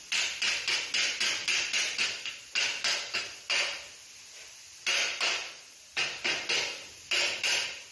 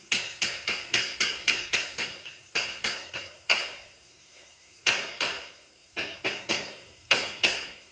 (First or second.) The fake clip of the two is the second